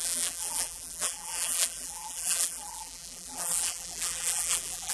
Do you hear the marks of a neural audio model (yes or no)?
yes